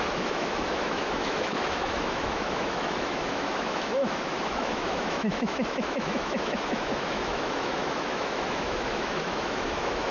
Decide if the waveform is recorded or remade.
remade